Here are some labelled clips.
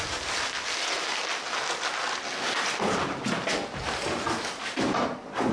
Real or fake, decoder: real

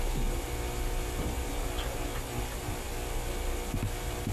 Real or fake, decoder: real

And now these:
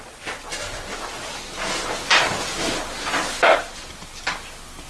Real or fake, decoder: real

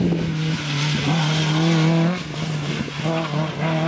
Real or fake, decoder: real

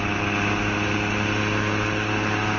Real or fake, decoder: real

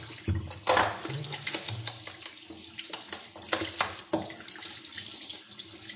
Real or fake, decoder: real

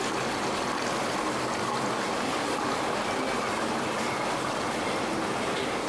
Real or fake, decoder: real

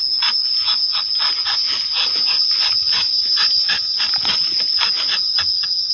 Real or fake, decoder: real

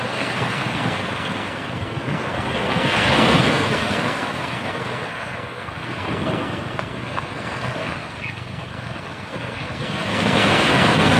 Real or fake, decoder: fake, codec, SNAC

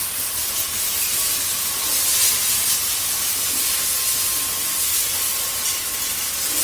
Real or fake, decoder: real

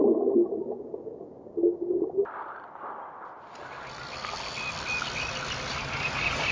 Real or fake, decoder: real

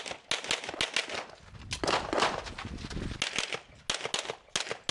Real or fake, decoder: real